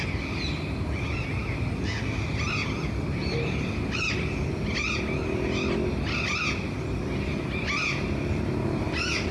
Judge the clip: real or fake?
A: real